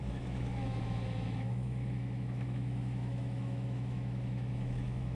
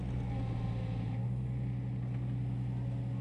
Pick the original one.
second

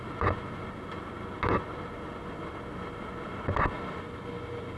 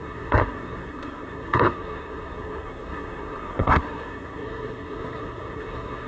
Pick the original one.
first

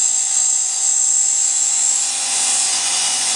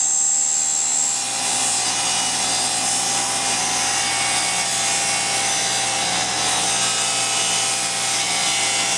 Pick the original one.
second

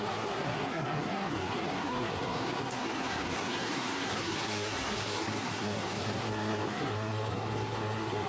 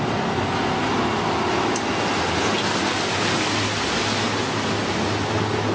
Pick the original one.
second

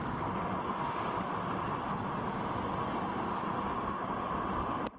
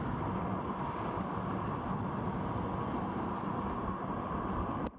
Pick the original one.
second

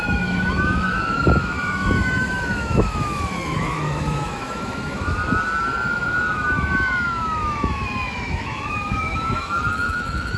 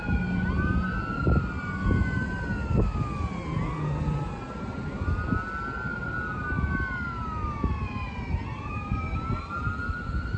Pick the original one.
second